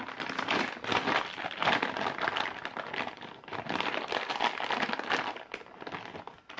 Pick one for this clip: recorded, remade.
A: recorded